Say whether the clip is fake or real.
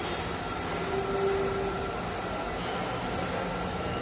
real